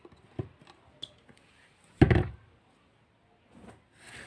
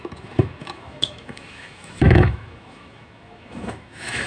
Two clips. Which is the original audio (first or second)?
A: first